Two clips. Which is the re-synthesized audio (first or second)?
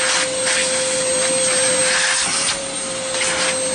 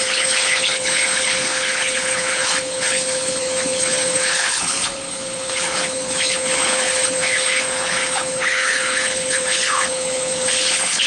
second